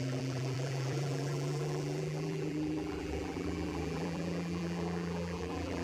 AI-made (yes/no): yes